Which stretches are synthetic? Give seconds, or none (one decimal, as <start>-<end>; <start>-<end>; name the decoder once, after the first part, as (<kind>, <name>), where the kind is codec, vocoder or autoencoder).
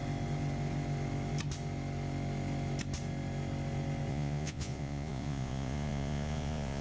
4.1-6.8 (vocoder, Vocos)